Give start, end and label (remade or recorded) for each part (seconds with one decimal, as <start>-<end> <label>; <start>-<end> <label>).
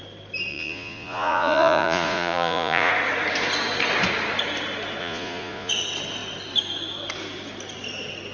0.0-0.5 recorded; 0.5-2.9 remade; 2.9-5.0 recorded; 5.0-5.7 remade; 5.7-8.3 recorded